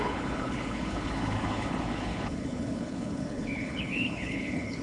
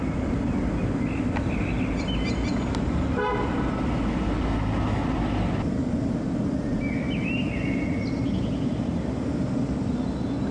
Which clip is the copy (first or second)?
first